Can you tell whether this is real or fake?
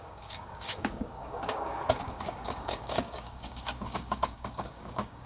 fake